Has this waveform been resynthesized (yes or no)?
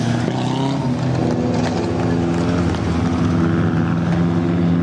no